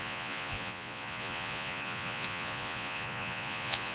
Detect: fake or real fake